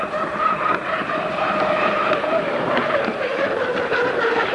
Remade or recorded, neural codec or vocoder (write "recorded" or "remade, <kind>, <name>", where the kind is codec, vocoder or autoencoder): remade, vocoder, BigVGAN v2